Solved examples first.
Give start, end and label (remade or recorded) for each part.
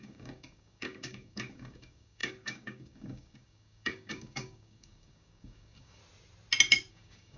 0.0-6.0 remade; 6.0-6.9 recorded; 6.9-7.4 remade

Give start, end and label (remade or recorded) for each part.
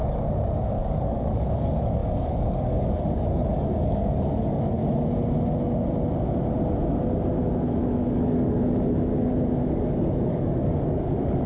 0.0-0.6 recorded; 0.6-4.8 remade; 4.8-7.8 recorded; 7.8-9.1 remade; 9.1-9.7 recorded; 9.7-11.5 remade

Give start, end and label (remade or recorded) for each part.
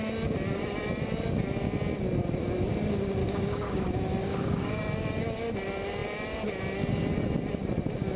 0.0-3.2 recorded; 3.2-3.8 remade; 3.8-4.2 recorded; 4.2-4.8 remade; 4.8-8.2 recorded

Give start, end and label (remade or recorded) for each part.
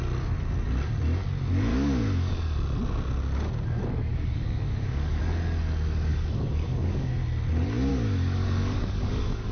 0.0-1.7 recorded; 1.7-2.3 remade; 2.3-4.1 recorded; 4.1-5.2 remade; 5.2-6.1 recorded; 6.1-7.1 remade; 7.1-7.9 recorded; 7.9-9.5 remade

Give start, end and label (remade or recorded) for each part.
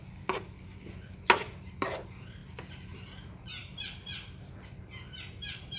0.0-5.8 recorded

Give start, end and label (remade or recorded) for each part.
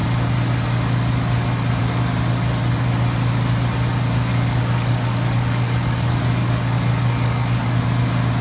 0.0-4.3 recorded; 4.3-7.8 remade; 7.8-8.4 recorded